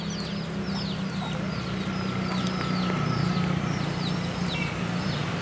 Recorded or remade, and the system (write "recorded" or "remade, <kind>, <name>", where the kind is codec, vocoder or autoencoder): recorded